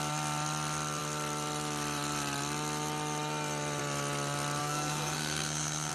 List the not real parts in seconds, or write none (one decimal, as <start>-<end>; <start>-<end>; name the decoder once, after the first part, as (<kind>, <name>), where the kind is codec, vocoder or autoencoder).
4.6-5.9 (codec, SNAC)